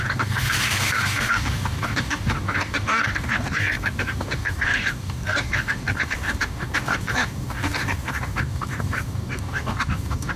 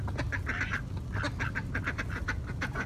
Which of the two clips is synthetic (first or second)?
first